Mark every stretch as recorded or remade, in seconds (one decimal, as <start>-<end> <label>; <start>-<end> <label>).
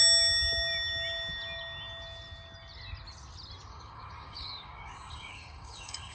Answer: 0.0-3.7 recorded; 3.7-6.1 remade